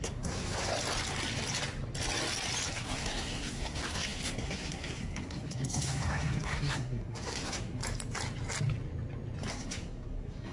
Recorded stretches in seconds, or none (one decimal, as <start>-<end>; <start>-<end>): 0.7-2.7; 7.8-9.5